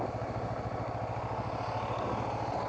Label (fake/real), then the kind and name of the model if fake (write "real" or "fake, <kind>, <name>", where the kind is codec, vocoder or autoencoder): real